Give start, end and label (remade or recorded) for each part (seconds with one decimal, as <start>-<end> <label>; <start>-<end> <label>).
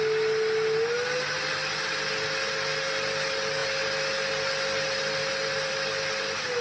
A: 0.0-6.6 recorded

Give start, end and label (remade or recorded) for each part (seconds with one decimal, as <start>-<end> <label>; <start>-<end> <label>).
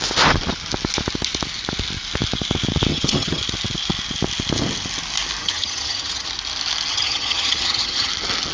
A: 0.0-2.9 recorded; 2.9-3.4 remade; 3.4-5.4 recorded; 5.4-6.3 remade; 6.3-6.9 recorded; 6.9-8.1 remade; 8.1-8.5 recorded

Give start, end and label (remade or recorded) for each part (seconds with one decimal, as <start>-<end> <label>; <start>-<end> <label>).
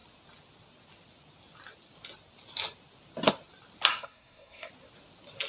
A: 0.0-3.9 recorded; 3.9-4.7 remade; 4.7-5.5 recorded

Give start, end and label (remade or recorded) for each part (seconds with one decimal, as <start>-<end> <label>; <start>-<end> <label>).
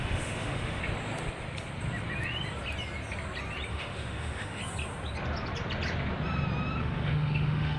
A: 0.0-0.8 remade; 0.8-3.7 recorded; 3.7-4.6 remade; 4.6-6.8 recorded; 6.8-7.8 remade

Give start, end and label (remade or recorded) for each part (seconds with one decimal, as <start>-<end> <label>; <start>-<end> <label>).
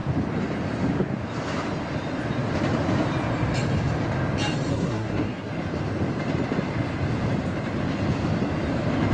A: 0.0-4.7 recorded; 4.7-5.5 remade; 5.5-9.1 recorded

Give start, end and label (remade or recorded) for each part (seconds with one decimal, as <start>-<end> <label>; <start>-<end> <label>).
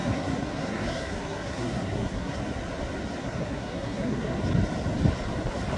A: 0.0-2.4 remade; 2.4-3.2 recorded; 3.2-4.4 remade; 4.4-5.8 recorded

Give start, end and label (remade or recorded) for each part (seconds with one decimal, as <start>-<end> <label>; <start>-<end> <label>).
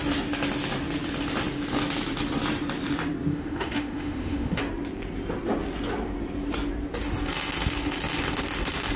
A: 0.0-3.3 recorded; 3.3-4.6 remade; 4.6-9.0 recorded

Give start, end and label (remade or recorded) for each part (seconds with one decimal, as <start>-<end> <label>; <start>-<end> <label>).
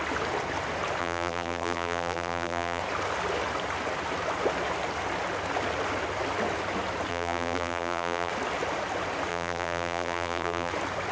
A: 0.0-1.0 recorded; 1.0-2.8 remade; 2.8-7.1 recorded; 7.1-8.3 remade; 8.3-9.3 recorded; 9.3-10.7 remade; 10.7-11.1 recorded